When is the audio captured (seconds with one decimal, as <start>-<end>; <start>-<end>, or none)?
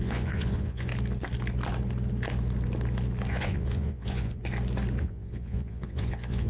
0.9-3.3; 4.4-5.0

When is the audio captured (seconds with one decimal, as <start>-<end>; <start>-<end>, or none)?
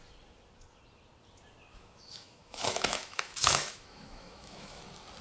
0.0-1.7; 4.8-5.2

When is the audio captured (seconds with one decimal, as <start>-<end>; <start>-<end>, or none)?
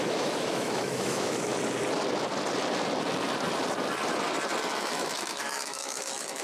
1.5-4.8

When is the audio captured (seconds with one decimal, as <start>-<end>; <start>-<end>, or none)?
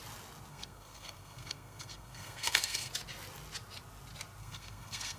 0.0-0.5; 2.9-4.4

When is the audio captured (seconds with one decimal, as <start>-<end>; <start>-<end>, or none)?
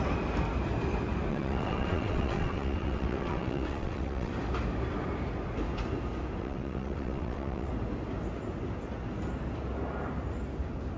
0.0-1.3; 4.3-6.4; 7.7-11.0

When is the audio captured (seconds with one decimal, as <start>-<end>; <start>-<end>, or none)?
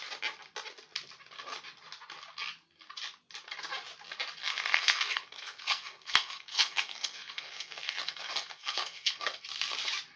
0.0-4.7; 9.4-10.2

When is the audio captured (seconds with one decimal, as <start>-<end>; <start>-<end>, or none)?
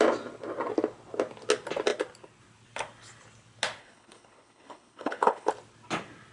0.0-3.8; 5.5-6.3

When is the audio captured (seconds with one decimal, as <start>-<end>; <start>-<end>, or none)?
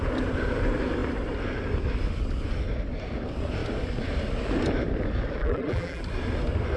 0.0-5.4; 6.0-6.8